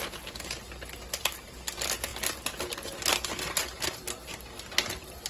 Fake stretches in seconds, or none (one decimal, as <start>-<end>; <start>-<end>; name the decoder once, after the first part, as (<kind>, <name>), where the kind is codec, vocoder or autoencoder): none